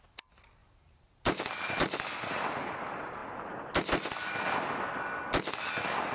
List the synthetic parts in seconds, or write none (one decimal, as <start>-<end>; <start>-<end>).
0.6-2.5